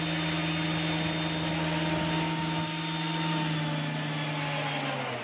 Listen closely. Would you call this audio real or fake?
real